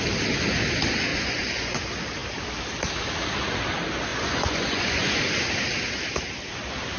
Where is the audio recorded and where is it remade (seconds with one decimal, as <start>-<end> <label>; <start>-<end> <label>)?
0.0-1.1 recorded; 1.1-1.8 remade; 1.8-4.1 recorded; 4.1-5.2 remade; 5.2-7.0 recorded